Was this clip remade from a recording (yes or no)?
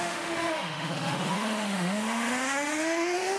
yes